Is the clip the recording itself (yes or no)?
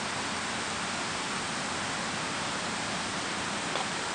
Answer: yes